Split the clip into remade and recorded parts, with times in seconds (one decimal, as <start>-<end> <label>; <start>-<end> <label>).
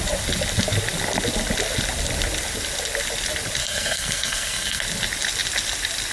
0.0-3.6 recorded; 3.6-4.8 remade; 4.8-6.1 recorded